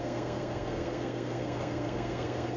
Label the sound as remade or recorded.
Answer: remade